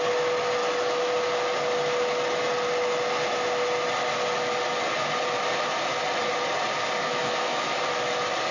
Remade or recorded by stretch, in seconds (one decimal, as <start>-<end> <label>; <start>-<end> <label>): 0.0-0.6 recorded; 0.6-1.1 remade; 1.1-7.0 recorded; 7.0-7.8 remade; 7.8-8.5 recorded